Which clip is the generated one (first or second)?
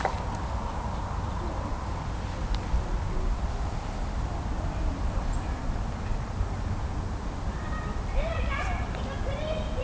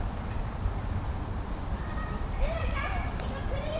second